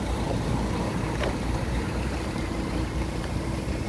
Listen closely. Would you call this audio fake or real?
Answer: fake